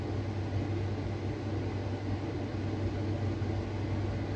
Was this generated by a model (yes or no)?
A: no